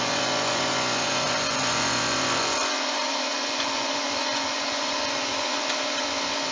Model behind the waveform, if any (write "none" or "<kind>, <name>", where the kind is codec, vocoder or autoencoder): vocoder, Vocos